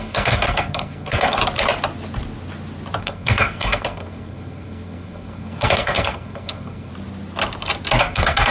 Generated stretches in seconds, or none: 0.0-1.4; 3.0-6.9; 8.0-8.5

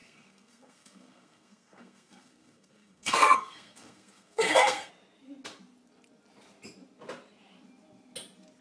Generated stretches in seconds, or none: 0.0-4.9

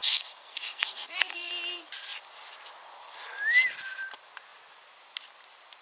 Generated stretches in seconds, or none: 0.0-1.5

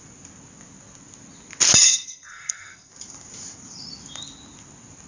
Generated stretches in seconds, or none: 1.8-2.9

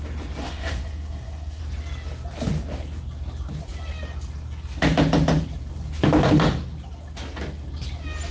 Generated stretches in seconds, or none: 0.4-1.6

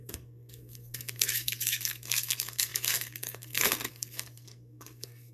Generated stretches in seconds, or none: 0.0-5.3

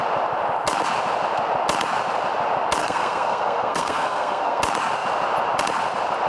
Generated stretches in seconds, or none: 2.8-4.6